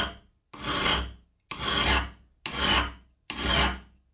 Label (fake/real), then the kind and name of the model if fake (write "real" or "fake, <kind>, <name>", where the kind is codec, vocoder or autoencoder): real